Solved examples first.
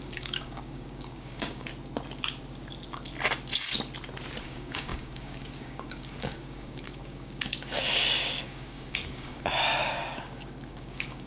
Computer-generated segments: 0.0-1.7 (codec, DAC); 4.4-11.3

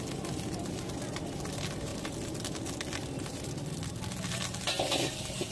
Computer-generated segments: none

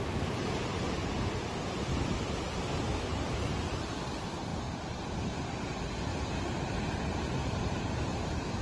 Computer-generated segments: 3.1-3.9 (vocoder, BigVGAN v2); 7.4-8.6

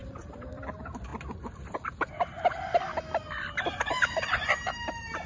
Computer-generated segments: 0.0-0.6 (vocoder, BigVGAN v2)